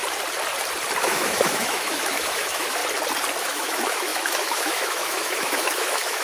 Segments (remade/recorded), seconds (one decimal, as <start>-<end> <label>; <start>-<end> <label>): 0.0-1.0 recorded; 1.0-2.8 remade; 2.8-3.4 recorded; 3.4-6.2 remade